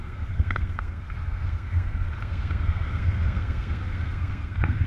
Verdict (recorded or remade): remade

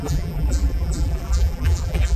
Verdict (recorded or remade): remade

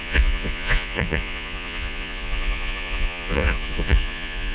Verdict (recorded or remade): remade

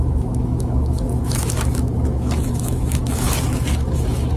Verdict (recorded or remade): remade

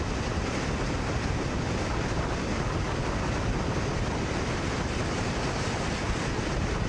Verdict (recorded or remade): recorded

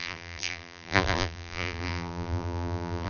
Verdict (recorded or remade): remade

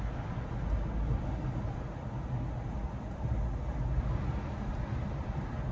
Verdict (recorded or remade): recorded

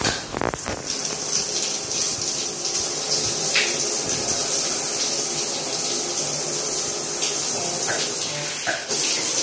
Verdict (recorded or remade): recorded